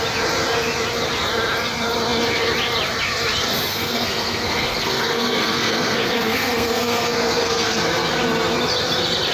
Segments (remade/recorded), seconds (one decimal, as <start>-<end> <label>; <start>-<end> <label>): 0.0-3.7 recorded; 3.7-7.7 remade; 7.7-9.3 recorded